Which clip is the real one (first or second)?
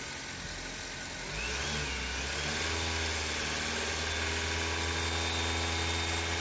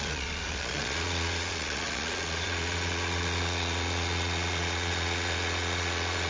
first